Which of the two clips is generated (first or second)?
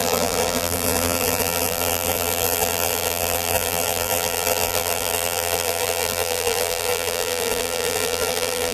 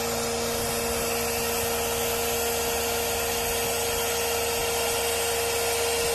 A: first